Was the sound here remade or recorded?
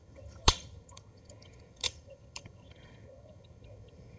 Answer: remade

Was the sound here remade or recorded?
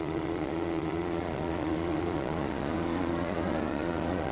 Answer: remade